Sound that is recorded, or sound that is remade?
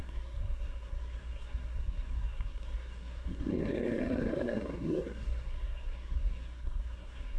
remade